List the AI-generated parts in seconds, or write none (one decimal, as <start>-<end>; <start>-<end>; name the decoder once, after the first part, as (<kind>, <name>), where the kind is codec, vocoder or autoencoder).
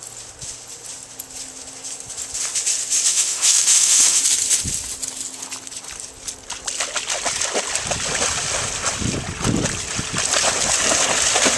3.1-4.2 (autoencoder, DAC-VAE)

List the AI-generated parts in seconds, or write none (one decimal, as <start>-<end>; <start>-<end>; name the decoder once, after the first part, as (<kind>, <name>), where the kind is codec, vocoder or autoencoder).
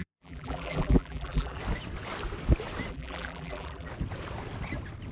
0.0-1.6 (vocoder, BigVGAN v2); 2.9-3.9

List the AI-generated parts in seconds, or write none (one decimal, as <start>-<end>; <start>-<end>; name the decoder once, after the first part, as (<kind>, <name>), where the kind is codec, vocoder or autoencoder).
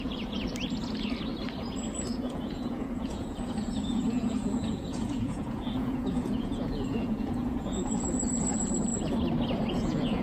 0.0-0.5 (vocoder, Vocos); 2.1-8.9; 9.7-10.2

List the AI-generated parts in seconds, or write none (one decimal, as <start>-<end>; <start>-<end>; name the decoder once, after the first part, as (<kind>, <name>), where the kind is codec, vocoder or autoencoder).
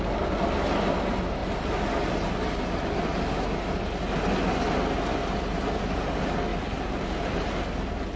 1.4-2.3 (vocoder, BigVGAN v2); 6.5-7.5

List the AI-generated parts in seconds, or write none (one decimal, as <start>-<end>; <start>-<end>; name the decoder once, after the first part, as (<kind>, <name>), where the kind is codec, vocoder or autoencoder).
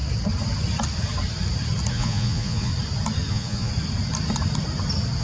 1.9-2.7 (vocoder, Vocos); 3.3-3.7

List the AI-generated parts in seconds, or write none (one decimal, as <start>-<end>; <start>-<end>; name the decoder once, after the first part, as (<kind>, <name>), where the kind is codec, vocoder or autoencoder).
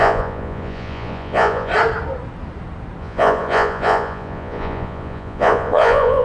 0.0-1.7 (vocoder, Vocos); 3.0-6.2